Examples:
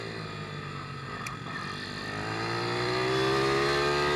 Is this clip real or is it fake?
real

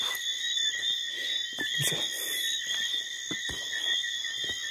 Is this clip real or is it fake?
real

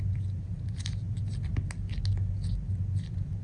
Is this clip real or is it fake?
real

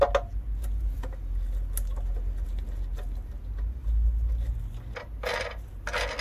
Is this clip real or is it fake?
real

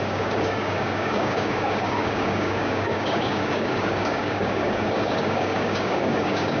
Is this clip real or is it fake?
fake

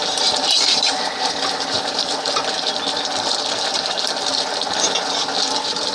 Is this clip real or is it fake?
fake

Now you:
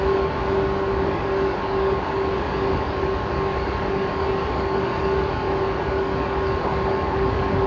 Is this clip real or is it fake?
fake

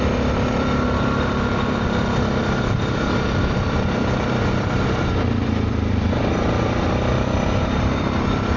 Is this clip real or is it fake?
fake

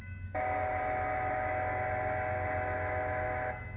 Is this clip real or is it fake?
real